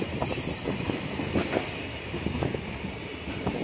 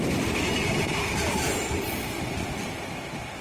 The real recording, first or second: first